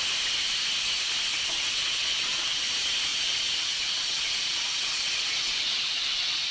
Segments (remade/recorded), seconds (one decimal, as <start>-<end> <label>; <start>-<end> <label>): 0.0-1.3 recorded; 1.3-2.6 remade; 2.6-3.1 recorded; 3.1-6.5 remade